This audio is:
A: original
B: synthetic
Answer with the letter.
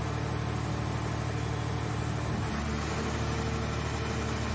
A